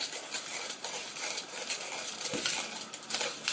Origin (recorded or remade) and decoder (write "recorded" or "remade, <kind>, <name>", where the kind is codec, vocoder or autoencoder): recorded